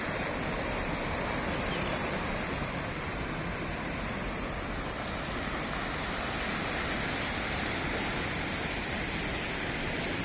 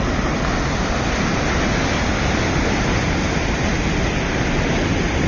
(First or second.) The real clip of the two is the second